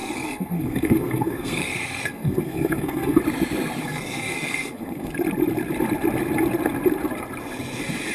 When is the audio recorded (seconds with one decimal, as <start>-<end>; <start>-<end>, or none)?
3.2-3.9; 5.1-8.1